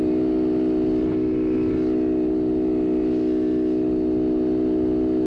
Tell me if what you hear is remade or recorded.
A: recorded